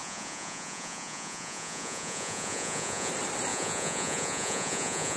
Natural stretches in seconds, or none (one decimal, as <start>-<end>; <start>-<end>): 3.1-3.5

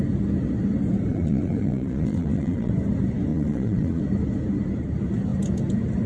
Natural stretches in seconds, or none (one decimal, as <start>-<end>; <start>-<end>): 0.0-1.1; 2.7-3.3; 4.0-6.1

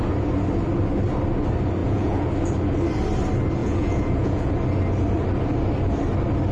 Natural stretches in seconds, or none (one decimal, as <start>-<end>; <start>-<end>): 0.0-1.8; 2.3-3.6; 4.5-6.5

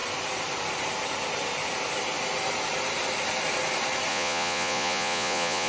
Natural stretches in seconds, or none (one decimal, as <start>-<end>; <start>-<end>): 0.0-4.1

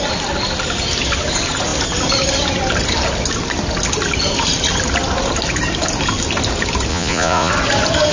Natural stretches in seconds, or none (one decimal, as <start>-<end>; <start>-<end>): 0.0-6.9; 7.5-8.1

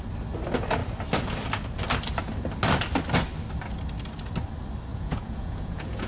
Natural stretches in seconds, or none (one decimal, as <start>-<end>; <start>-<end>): 0.0-4.9

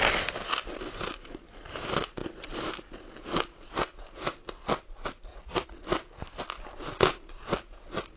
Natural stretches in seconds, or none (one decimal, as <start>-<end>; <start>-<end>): 0.0-5.3; 5.8-8.2